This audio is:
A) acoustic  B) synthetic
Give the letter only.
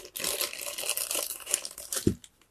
A